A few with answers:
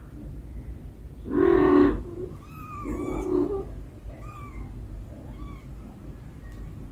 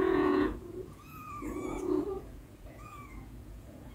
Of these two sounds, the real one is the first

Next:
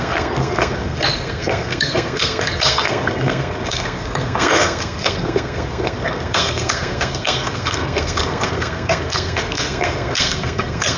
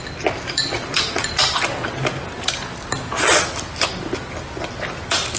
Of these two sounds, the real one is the second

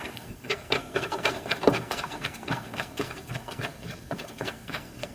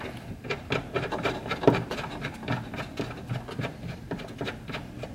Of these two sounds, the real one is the second